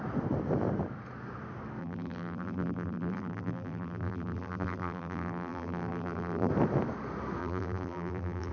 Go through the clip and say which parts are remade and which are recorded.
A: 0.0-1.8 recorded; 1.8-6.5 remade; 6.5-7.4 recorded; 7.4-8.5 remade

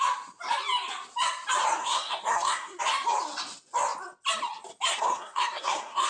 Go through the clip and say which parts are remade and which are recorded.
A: 0.0-1.8 recorded; 1.8-2.8 remade; 2.8-4.9 recorded; 4.9-6.1 remade

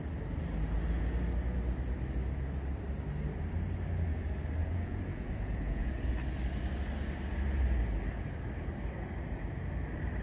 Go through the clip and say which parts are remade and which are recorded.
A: 0.0-4.6 recorded; 4.6-6.1 remade; 6.1-10.2 recorded

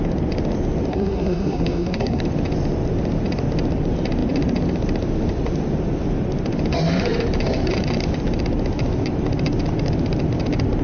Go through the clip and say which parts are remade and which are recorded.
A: 0.0-0.9 recorded; 0.9-2.2 remade; 2.2-10.8 recorded

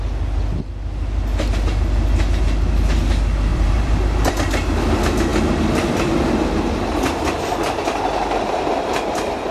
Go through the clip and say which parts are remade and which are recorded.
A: 0.0-3.5 recorded; 3.5-4.3 remade; 4.3-9.5 recorded